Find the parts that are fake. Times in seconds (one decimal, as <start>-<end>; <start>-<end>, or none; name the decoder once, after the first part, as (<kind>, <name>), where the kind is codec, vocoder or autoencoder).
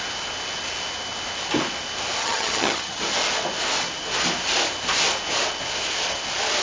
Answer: 2.2-3.0 (vocoder, HiFi-GAN)